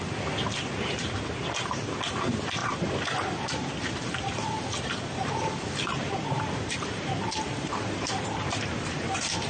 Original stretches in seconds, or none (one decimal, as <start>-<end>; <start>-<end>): 0.0-2.6; 5.3-5.9